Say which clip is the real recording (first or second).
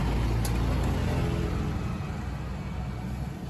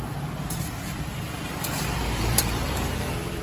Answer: first